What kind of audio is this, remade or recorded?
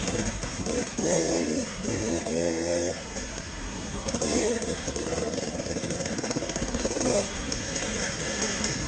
remade